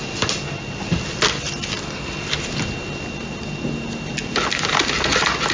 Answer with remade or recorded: recorded